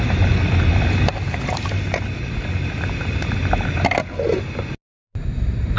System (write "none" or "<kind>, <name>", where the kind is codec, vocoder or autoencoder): none